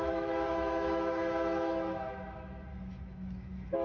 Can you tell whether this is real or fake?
fake